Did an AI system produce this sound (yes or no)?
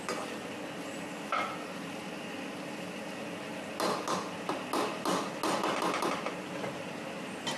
no